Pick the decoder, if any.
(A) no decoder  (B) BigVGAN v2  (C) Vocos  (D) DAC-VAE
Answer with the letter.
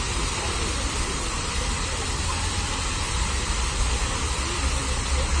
B